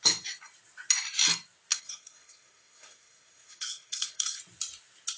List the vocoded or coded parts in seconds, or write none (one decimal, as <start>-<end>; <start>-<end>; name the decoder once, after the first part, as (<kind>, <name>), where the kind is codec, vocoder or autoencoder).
1.7-4.4 (codec, SNAC)